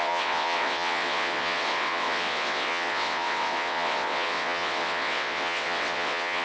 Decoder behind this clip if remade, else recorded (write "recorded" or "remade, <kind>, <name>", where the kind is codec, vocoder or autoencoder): remade, vocoder, WaveNeXt